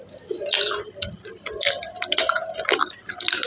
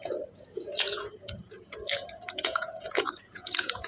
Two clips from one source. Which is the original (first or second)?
first